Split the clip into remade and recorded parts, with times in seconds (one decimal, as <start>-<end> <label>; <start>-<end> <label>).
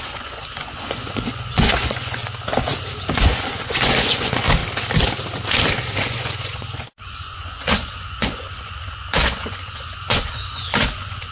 0.0-2.2 remade; 2.2-3.2 recorded; 3.2-4.6 remade; 4.6-6.0 recorded; 6.0-11.3 remade